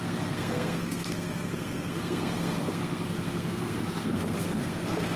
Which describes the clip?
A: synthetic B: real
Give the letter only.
A